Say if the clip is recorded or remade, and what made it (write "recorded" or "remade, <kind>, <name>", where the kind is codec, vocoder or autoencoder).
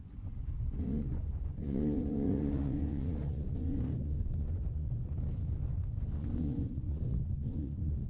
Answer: remade, vocoder, Vocos